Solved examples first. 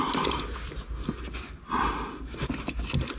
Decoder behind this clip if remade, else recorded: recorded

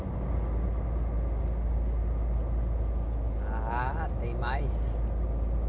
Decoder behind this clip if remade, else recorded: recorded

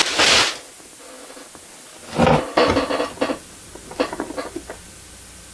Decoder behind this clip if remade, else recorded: recorded